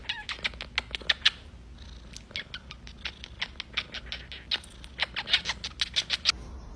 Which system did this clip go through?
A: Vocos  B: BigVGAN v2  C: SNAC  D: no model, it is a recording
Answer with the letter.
D